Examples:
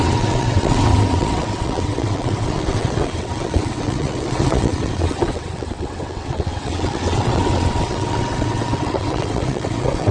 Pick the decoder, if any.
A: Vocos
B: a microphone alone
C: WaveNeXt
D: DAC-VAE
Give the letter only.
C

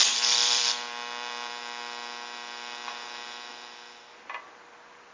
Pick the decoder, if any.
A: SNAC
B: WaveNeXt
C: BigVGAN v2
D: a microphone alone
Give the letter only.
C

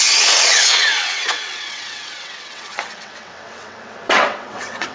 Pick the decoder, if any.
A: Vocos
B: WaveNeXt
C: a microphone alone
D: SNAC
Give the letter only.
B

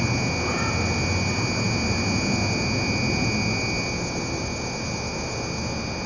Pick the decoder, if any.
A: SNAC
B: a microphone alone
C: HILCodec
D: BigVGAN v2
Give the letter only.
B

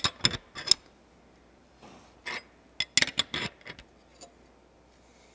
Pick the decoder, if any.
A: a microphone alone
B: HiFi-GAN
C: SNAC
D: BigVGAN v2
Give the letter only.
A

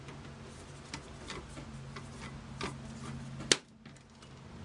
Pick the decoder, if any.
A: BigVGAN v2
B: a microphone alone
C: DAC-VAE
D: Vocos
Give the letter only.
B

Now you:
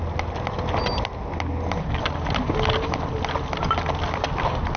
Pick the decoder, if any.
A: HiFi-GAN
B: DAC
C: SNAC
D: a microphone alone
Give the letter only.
D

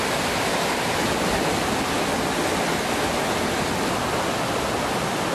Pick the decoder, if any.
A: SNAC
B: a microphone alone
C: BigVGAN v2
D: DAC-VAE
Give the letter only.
B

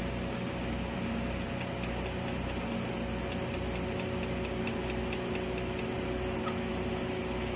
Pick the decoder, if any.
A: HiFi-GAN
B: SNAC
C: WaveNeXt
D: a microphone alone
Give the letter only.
D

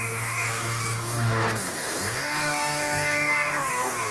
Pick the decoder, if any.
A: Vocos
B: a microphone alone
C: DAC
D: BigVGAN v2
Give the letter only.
C